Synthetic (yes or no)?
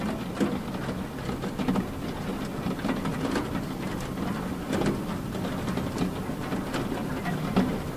no